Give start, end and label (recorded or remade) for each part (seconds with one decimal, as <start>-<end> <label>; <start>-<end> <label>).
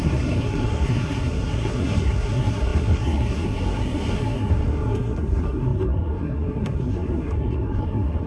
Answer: 0.0-8.3 remade